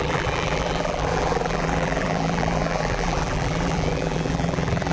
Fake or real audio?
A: fake